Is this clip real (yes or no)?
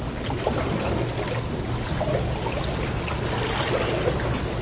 yes